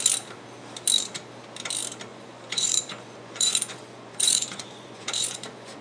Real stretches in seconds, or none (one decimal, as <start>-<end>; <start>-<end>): 0.0-2.1